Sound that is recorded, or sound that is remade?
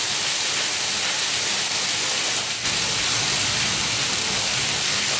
recorded